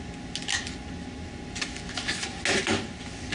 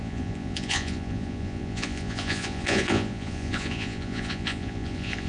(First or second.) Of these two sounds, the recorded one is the first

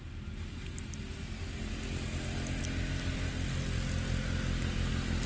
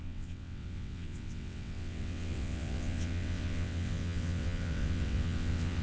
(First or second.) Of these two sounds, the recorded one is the first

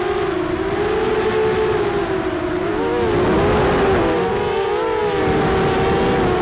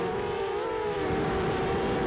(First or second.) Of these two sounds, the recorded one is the first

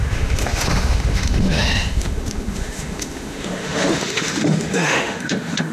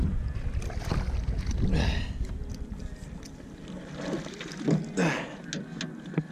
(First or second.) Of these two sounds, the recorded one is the second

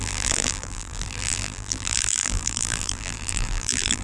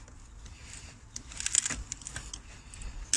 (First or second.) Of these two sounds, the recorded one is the second